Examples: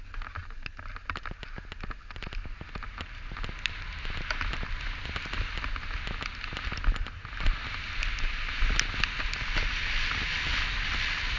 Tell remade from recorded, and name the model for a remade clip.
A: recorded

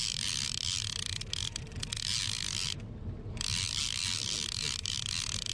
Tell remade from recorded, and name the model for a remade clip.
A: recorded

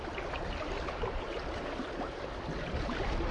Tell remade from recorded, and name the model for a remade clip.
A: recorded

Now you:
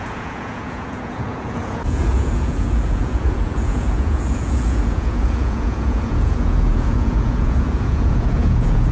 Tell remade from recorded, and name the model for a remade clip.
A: remade, vocoder, Vocos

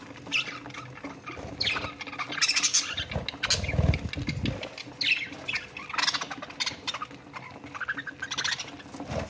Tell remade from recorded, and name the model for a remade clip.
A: recorded